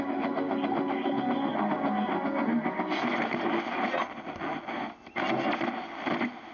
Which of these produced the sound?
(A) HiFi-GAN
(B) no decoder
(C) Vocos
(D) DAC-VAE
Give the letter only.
B